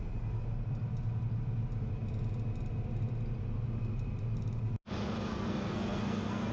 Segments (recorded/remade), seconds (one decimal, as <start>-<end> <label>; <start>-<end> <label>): 0.0-5.3 recorded; 5.3-6.5 remade